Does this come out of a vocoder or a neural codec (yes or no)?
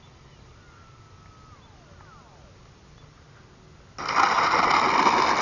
no